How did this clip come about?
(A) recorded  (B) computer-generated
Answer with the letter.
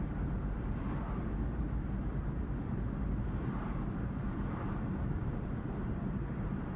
B